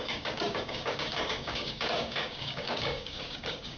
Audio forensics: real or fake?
fake